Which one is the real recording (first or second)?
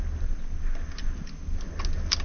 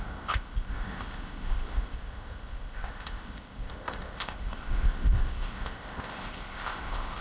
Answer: first